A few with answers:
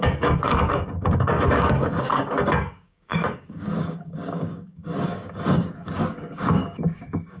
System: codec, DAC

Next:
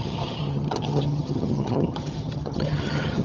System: vocoder, HiFi-GAN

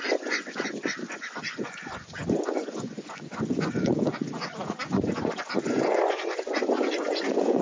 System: vocoder, Vocos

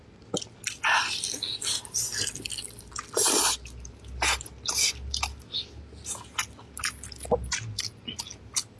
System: none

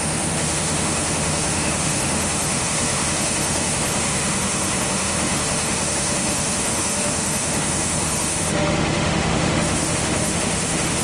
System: autoencoder, DAC-VAE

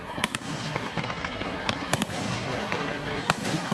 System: codec, SNAC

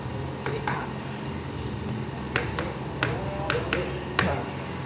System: none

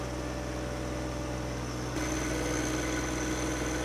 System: none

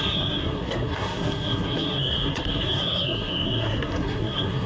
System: codec, SNAC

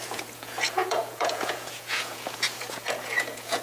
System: vocoder, Vocos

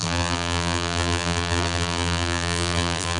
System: vocoder, BigVGAN v2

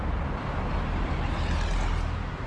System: none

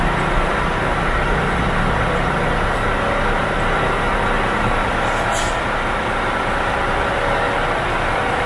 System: none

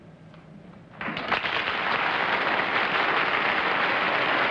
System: none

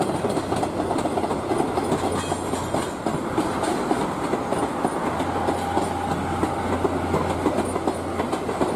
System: none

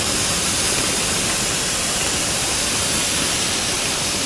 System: none